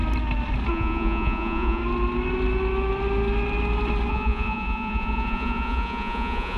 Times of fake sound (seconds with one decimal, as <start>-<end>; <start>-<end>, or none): 0.7-1.8; 4.1-6.6

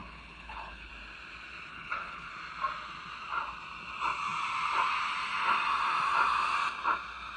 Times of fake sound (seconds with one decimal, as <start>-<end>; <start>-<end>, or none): 0.0-0.9; 1.7-2.3